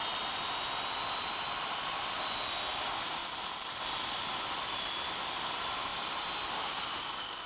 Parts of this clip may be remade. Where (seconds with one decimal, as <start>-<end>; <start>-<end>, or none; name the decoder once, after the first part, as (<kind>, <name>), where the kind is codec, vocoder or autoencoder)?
3.2-3.8 (vocoder, BigVGAN v2)